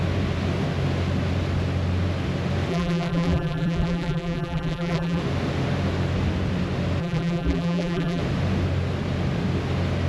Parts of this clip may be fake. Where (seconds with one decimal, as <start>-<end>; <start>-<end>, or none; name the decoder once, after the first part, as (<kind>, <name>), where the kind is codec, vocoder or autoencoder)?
2.7-5.2 (vocoder, BigVGAN v2); 7.0-8.2